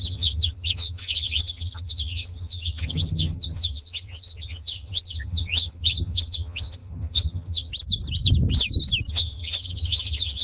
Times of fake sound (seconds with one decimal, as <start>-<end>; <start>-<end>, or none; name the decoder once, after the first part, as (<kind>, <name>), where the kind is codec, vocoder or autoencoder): 0.0-7.7 (vocoder, HiFi-GAN); 9.1-10.4